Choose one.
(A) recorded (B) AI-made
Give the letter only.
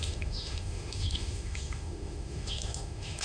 B